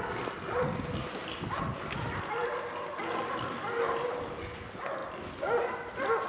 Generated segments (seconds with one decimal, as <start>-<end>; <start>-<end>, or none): none

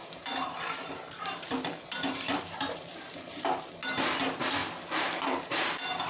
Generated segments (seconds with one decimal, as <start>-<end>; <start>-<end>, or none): 0.0-3.7; 4.6-6.1

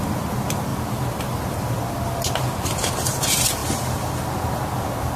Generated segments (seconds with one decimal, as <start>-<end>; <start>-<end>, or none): none

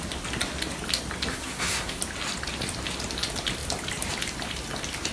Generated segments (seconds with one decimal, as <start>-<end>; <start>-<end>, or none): 1.3-2.0

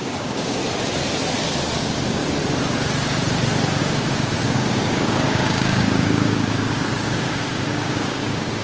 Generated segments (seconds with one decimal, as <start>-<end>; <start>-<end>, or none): 0.0-0.6; 1.8-2.2; 3.8-8.6

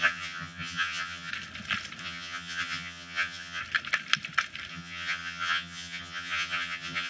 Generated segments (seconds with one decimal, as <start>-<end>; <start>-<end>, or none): 0.0-1.3; 2.0-3.6; 4.7-7.1

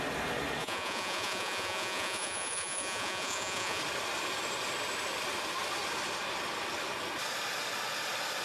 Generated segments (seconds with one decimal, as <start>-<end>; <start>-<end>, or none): 0.6-3.8

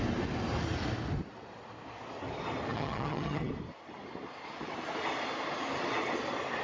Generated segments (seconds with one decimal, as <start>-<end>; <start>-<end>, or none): 2.7-3.5